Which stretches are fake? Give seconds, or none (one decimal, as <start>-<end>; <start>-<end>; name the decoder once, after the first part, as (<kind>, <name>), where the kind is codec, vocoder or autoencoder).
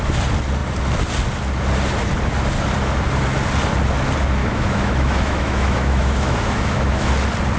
4.4-7.1 (autoencoder, DAC-VAE)